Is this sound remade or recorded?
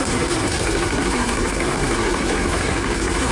remade